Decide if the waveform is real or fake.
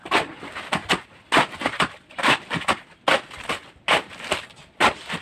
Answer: real